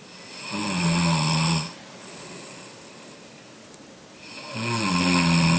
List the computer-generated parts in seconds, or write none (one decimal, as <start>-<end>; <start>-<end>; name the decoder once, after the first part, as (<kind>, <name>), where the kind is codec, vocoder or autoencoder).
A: none